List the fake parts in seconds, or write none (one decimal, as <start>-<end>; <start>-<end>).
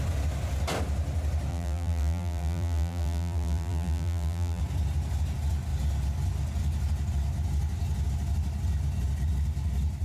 1.5-4.6